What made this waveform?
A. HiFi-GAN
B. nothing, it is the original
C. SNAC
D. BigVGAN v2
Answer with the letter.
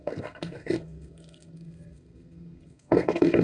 C